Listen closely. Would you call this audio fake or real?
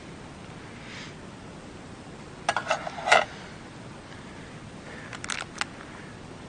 real